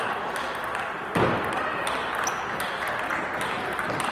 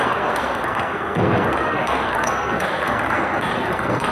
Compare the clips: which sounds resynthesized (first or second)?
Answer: second